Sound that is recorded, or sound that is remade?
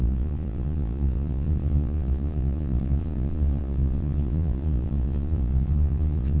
remade